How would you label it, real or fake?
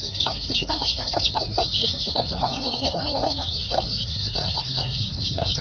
fake